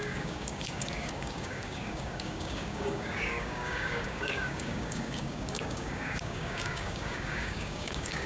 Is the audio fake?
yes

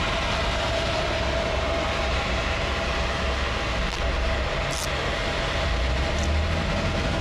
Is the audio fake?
no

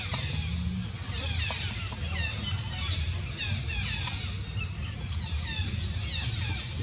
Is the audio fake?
no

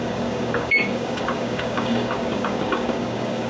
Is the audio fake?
yes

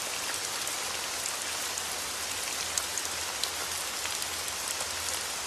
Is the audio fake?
no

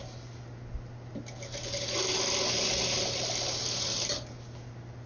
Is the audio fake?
no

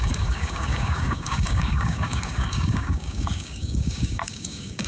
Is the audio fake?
yes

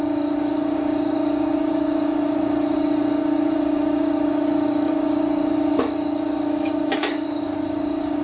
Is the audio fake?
yes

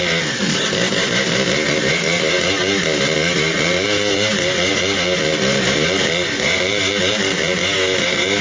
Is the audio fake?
no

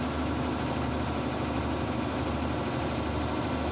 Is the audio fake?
no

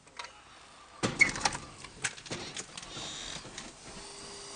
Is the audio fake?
no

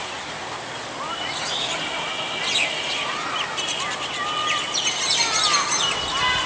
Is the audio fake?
no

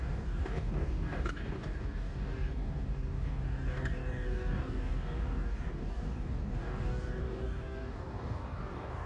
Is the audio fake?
yes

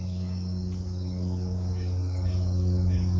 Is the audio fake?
yes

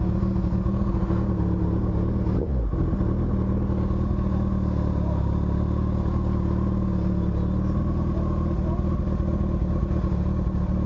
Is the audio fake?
no